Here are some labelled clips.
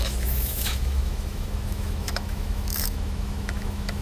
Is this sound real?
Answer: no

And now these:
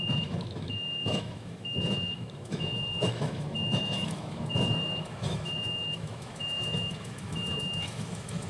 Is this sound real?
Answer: no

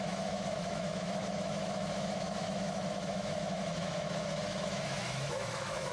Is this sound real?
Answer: no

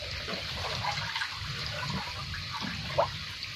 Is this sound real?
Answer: yes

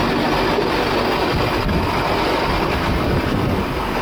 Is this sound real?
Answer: yes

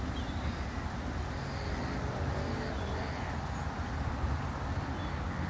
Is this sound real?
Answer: yes